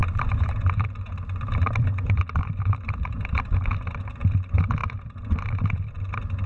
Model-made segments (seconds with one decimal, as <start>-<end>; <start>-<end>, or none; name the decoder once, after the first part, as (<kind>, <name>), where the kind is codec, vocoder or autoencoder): 0.0-3.9 (vocoder, BigVGAN v2); 4.8-5.9